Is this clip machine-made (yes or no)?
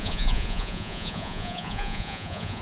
yes